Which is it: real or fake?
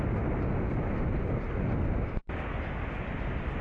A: real